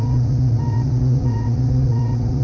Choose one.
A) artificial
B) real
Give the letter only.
A